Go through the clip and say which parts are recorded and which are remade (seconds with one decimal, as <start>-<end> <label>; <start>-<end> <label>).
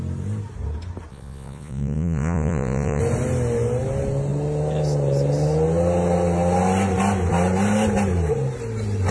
0.0-1.1 recorded; 1.1-3.0 remade; 3.0-9.1 recorded